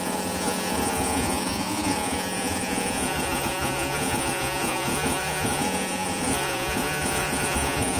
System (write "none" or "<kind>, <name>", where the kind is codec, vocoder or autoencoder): vocoder, Vocos